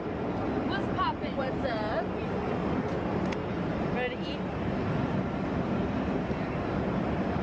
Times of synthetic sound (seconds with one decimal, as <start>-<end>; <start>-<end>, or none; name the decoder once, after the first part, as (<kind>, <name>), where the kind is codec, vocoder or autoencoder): 0.8-2.5 (vocoder, BigVGAN v2)